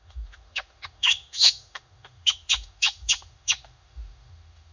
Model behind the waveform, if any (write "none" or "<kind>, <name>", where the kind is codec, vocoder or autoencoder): autoencoder, DAC-VAE